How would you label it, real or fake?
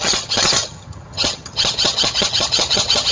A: fake